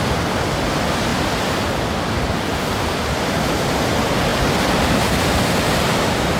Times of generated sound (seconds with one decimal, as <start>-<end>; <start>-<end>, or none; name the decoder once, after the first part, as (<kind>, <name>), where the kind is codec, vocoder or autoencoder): 1.1-2.3 (vocoder, BigVGAN v2); 4.3-6.0